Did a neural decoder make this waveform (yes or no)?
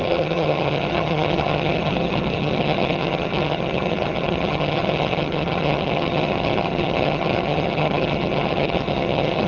yes